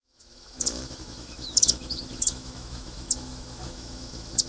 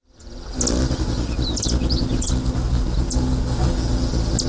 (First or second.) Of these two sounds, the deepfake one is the first